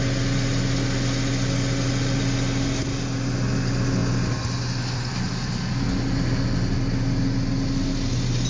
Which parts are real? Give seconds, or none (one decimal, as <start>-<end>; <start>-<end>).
0.0-8.5